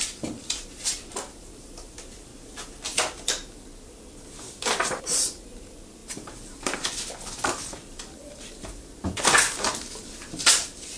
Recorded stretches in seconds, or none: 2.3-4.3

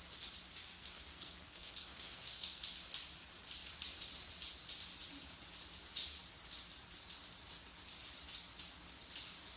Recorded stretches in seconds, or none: 0.0-0.6; 2.6-9.6

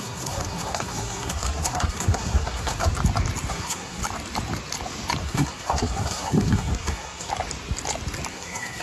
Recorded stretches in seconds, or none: 2.9-3.5; 4.0-5.2; 7.3-8.3